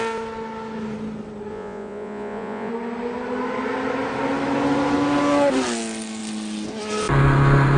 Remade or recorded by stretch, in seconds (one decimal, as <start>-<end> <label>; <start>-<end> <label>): 0.0-1.5 recorded; 1.5-2.7 remade; 2.7-7.8 recorded